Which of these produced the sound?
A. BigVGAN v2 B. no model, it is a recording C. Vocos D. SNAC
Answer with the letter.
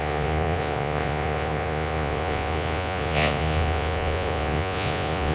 C